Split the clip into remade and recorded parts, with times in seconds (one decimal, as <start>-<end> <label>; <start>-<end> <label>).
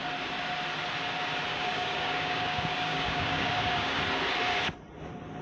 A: 0.0-1.5 recorded; 1.5-4.0 remade; 4.0-5.4 recorded